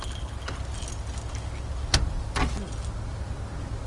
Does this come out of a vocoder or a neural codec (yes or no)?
no